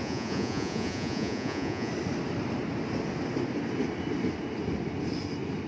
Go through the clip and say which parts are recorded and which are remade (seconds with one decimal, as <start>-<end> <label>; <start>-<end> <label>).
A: 0.0-1.9 remade; 1.9-5.7 recorded